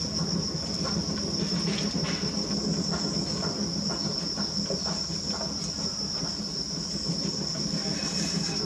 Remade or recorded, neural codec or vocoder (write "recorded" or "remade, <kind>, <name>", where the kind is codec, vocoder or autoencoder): remade, vocoder, BigVGAN v2